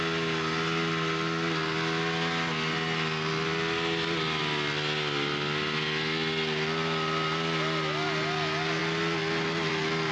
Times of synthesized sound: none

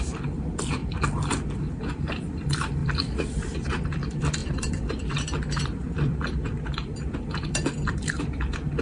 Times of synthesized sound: 0.0-8.8 (vocoder, BigVGAN v2)

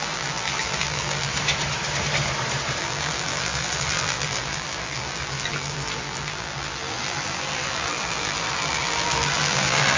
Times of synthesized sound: 0.0-1.3 (vocoder, BigVGAN v2); 2.8-10.0

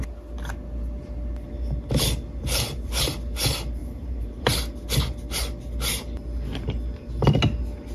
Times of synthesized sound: 3.8-4.6 (vocoder, BigVGAN v2)

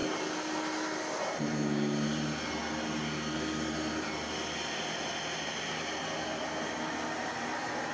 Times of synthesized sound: none